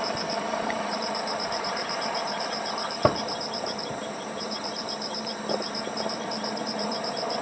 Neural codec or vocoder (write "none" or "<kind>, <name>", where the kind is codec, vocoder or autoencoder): vocoder, BigVGAN v2